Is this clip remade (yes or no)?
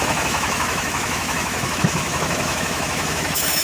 yes